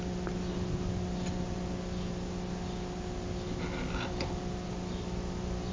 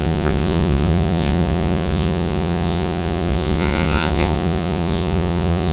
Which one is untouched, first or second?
first